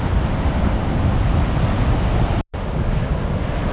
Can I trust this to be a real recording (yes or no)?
yes